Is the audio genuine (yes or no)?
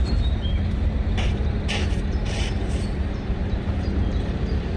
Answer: no